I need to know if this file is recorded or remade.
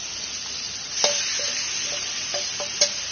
recorded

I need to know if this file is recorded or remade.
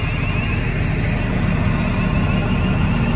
recorded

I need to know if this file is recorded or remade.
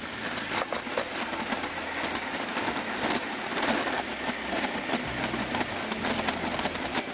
recorded